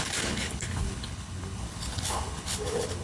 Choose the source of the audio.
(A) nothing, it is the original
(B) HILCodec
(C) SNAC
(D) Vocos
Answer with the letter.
B